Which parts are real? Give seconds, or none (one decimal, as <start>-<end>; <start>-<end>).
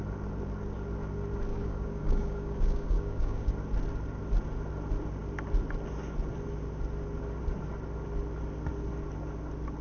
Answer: 0.0-1.5; 3.5-9.8